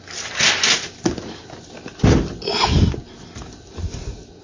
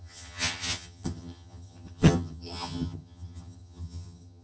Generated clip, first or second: second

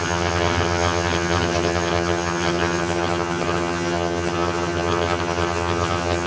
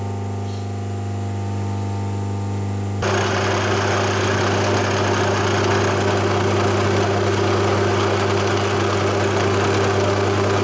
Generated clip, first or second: first